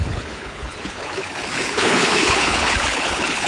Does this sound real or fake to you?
fake